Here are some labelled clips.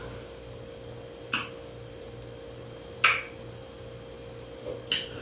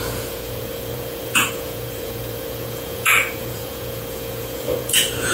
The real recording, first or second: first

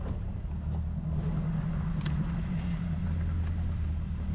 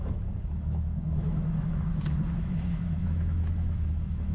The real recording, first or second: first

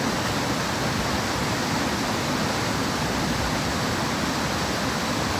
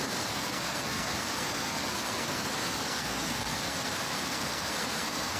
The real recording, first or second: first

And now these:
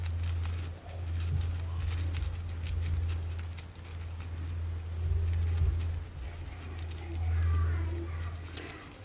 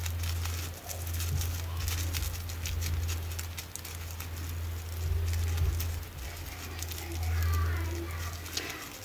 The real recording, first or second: second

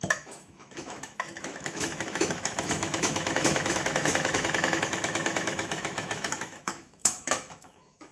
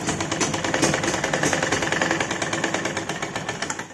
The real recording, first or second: second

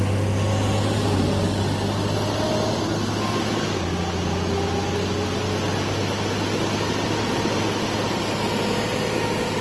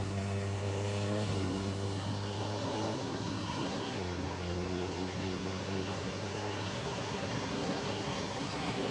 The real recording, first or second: first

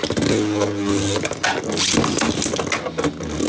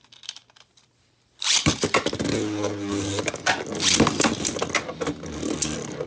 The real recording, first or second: first